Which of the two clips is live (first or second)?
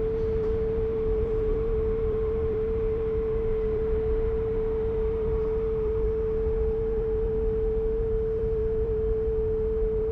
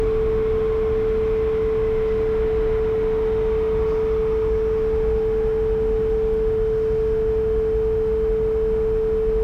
second